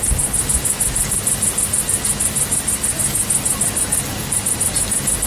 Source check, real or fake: real